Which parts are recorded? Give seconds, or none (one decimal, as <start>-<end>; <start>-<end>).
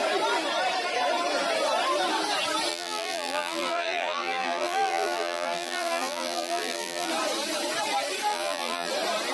0.0-2.7; 7.1-8.3; 8.9-9.3